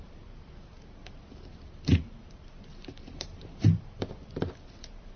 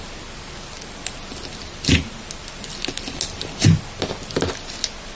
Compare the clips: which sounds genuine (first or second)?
second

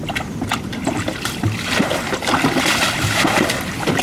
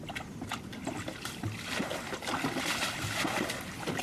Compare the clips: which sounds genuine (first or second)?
second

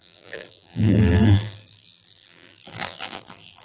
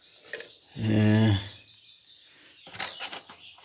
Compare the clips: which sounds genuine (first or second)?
second